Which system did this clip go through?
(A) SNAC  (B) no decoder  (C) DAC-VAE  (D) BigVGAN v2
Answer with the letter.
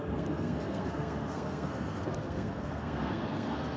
A